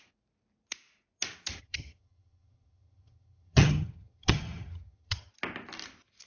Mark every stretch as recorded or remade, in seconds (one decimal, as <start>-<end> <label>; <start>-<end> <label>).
0.0-1.5 recorded; 1.5-5.3 remade; 5.3-6.3 recorded